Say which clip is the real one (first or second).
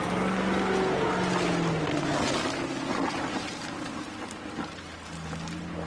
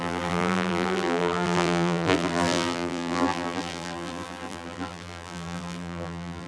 first